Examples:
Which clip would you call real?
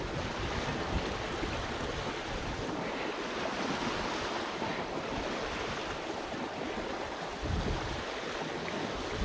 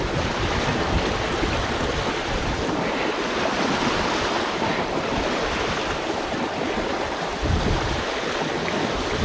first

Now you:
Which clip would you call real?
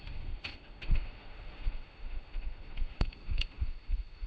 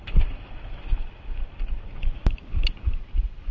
second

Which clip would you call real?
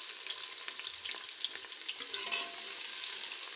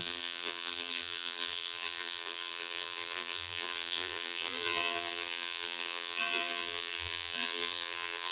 first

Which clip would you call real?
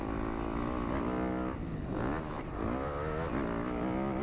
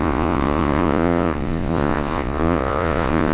first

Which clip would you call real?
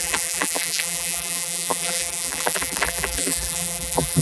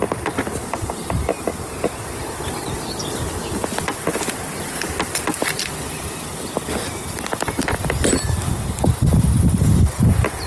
second